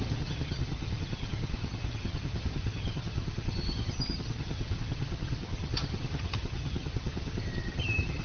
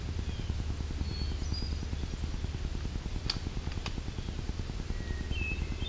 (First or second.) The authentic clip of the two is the second